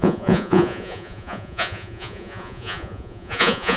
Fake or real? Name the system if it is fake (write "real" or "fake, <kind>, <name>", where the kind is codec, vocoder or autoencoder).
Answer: fake, vocoder, Vocos